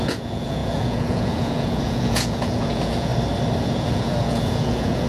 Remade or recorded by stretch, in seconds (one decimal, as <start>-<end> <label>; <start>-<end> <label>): 0.0-3.1 remade; 3.1-3.6 recorded; 3.6-5.1 remade